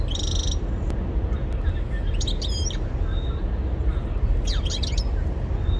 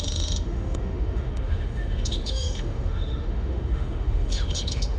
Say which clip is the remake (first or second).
second